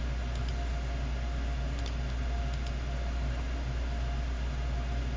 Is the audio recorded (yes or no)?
yes